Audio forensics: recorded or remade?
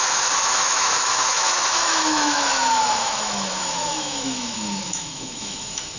remade